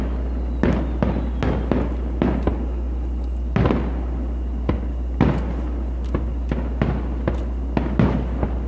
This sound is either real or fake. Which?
real